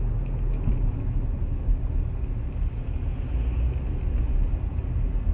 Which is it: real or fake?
real